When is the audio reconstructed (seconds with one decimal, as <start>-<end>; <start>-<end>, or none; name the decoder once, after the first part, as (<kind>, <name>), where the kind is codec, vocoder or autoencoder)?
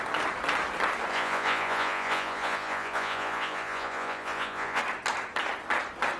1.1-4.8 (vocoder, Vocos)